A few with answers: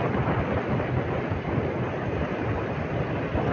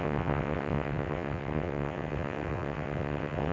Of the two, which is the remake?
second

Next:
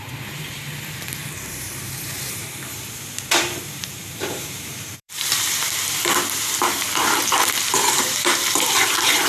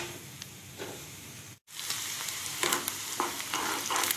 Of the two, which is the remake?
first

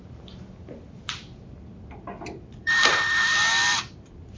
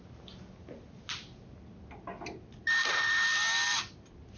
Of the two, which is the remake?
first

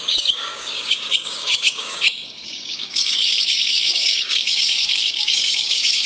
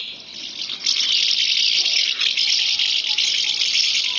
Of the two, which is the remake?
first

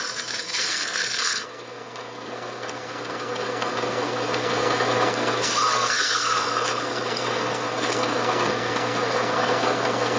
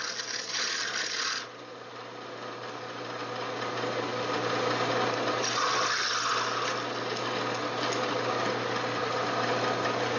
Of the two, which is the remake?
first